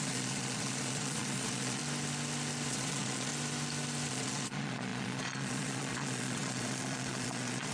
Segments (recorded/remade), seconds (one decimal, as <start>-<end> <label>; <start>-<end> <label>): 0.0-1.8 remade; 1.8-2.7 recorded; 2.7-3.3 remade; 3.3-4.1 recorded; 4.1-7.7 remade